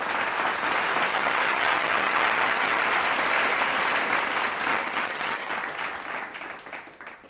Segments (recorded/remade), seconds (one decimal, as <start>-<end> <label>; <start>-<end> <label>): 0.0-1.1 recorded; 1.1-2.8 remade; 2.8-4.7 recorded; 4.7-5.5 remade; 5.5-7.3 recorded